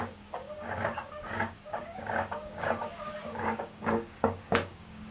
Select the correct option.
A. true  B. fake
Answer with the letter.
B